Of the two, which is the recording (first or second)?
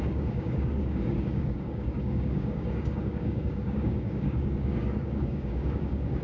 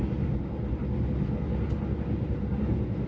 second